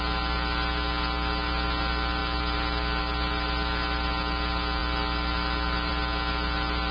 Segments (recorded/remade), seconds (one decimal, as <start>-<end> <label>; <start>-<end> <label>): 0.0-6.9 recorded